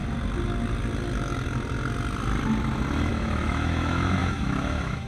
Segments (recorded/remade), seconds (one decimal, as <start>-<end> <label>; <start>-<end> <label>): 0.0-3.1 recorded; 3.1-5.1 remade